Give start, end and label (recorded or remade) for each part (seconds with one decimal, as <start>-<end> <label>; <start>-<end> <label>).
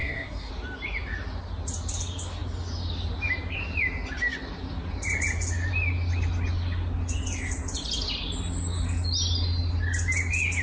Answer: 0.0-0.5 remade; 0.5-10.6 recorded